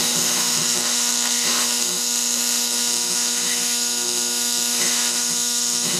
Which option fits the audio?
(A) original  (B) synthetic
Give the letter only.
B